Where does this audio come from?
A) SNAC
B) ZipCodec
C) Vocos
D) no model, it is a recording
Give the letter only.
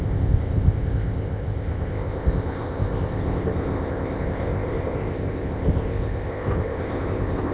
B